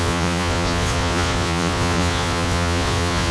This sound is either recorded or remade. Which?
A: remade